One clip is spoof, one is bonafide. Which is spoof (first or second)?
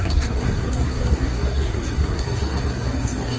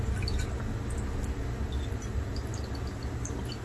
first